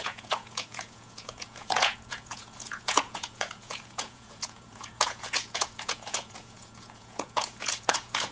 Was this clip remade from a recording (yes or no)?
yes